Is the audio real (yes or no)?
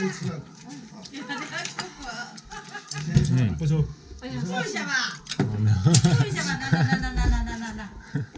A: yes